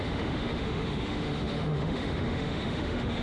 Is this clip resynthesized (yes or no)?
yes